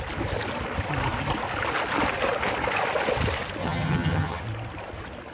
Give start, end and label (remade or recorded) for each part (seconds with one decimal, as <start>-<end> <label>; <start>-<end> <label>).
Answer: 0.0-3.6 recorded; 3.6-4.4 remade; 4.4-5.3 recorded

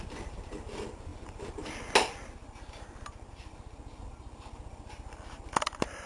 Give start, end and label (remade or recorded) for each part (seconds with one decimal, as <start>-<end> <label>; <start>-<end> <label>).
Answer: 0.0-6.1 recorded